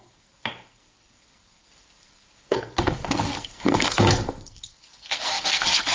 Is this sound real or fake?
fake